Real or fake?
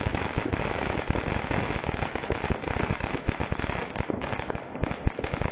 fake